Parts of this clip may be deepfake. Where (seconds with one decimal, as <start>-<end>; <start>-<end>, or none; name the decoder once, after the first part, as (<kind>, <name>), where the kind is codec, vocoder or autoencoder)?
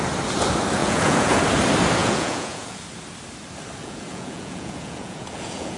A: 0.8-1.4 (vocoder, Vocos); 2.0-2.8; 3.8-5.8